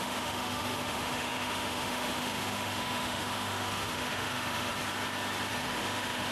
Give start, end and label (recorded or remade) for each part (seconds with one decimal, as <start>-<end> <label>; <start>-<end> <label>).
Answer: 0.0-4.7 remade; 4.7-5.5 recorded; 5.5-6.3 remade